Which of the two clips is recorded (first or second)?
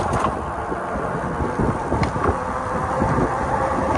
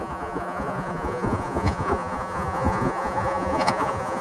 first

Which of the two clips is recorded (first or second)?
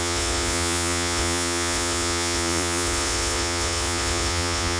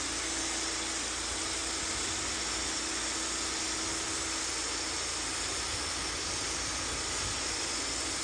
second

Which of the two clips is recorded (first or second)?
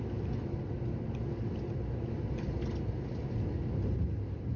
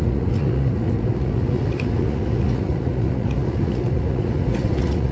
first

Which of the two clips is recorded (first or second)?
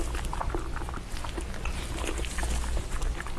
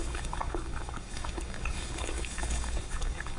first